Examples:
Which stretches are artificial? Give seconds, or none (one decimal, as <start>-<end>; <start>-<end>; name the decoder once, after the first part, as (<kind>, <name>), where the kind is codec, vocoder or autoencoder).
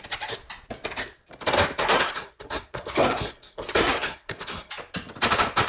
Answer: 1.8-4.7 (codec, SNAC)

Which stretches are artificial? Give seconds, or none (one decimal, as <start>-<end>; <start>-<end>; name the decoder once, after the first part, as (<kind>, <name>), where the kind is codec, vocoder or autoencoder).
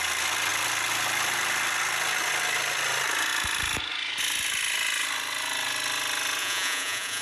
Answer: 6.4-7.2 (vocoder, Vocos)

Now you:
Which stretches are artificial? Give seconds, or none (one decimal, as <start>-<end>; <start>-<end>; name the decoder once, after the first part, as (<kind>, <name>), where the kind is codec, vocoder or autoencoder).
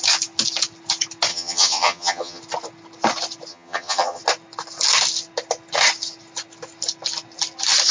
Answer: 1.3-2.4 (vocoder, HiFi-GAN); 3.5-4.2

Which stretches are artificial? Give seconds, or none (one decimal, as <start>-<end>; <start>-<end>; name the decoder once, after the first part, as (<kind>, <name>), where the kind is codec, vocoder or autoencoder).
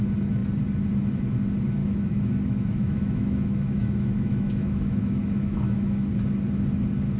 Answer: 1.8-6.1 (autoencoder, DAC-VAE)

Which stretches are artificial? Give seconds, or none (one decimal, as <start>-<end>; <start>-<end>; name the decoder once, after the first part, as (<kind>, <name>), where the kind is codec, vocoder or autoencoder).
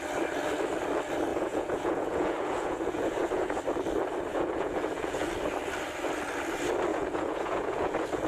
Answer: 1.3-3.6 (vocoder, Vocos); 4.3-5.3; 6.9-8.3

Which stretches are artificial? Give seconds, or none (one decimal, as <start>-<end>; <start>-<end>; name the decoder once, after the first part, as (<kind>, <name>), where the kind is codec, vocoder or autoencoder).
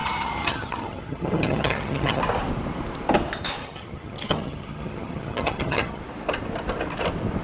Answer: 0.0-2.2 (vocoder, HiFi-GAN); 3.6-6.0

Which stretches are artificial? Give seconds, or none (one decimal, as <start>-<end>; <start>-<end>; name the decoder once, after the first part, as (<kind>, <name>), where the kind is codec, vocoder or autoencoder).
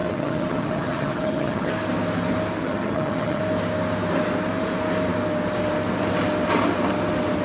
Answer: 0.0-1.7 (vocoder, HiFi-GAN); 2.6-3.4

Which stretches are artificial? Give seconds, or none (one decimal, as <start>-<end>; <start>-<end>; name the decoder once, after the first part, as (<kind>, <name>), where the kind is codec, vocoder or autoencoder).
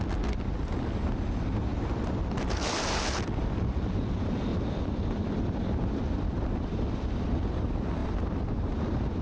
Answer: 1.7-3.9 (vocoder, BigVGAN v2); 4.5-7.5; 8.0-8.5